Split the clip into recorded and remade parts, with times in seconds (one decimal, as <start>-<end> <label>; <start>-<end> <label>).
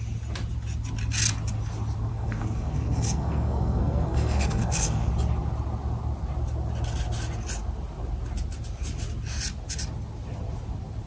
0.0-2.1 recorded; 2.1-5.1 remade; 5.1-11.1 recorded